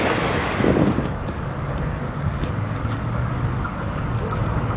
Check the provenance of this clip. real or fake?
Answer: fake